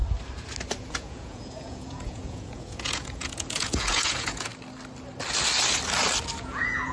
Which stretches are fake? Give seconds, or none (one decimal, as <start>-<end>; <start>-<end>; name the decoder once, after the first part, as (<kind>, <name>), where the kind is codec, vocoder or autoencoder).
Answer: 0.8-4.5 (vocoder, Vocos); 6.4-6.9